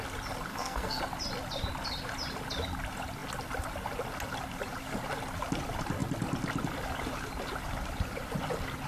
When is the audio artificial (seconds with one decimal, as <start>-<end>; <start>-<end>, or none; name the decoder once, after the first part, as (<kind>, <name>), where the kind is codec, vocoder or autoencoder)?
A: 0.5-1.0 (codec, SNAC)